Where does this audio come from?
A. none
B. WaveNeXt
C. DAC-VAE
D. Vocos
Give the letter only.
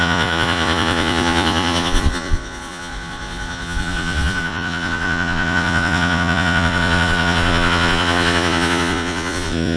D